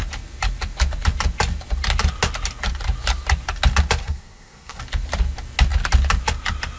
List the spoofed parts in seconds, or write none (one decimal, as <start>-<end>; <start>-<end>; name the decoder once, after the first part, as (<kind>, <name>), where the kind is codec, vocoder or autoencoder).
4.0-4.8 (codec, SNAC)